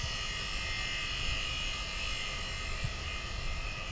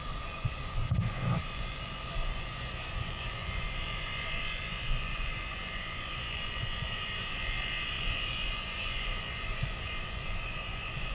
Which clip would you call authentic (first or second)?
first